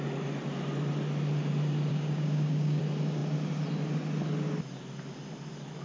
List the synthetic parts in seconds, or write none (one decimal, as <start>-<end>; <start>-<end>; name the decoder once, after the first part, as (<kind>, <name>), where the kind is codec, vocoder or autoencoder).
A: 1.9-2.8 (codec, DAC)